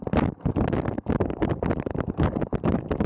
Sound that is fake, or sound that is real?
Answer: real